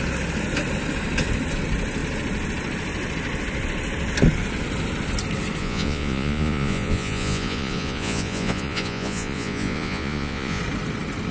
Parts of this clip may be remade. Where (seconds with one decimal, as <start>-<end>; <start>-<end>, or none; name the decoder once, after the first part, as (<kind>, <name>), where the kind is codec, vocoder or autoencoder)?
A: 5.6-10.6 (vocoder, Vocos)